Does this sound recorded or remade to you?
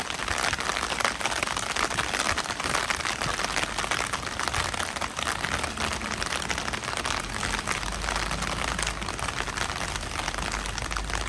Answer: recorded